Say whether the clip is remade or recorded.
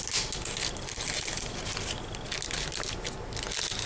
recorded